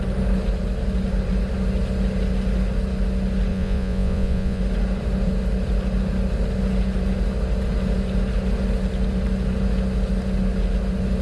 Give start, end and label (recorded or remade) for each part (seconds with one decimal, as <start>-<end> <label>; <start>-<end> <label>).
0.0-3.5 recorded; 3.5-4.6 remade; 4.6-11.2 recorded

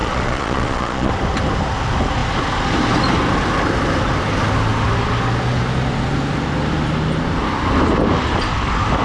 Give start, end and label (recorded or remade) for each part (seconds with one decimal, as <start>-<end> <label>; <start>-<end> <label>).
0.0-1.1 remade; 1.1-9.0 recorded

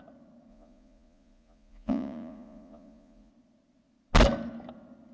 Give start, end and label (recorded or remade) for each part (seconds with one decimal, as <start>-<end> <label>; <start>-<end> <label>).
0.0-0.5 recorded; 0.5-3.3 remade; 3.3-5.1 recorded